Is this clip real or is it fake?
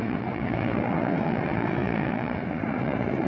fake